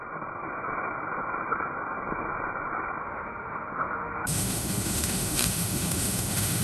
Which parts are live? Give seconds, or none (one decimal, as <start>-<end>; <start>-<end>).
0.0-3.0